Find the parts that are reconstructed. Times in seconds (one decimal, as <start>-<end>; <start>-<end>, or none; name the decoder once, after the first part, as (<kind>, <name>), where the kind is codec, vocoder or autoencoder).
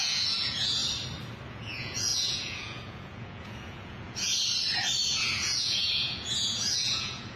0.0-0.8 (vocoder, Vocos); 1.5-4.3; 5.1-7.4